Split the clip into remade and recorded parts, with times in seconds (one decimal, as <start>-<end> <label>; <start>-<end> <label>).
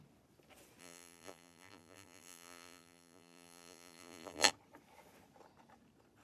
0.0-0.8 recorded; 0.8-4.5 remade; 4.5-6.2 recorded